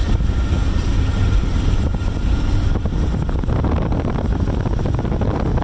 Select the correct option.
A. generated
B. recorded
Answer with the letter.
B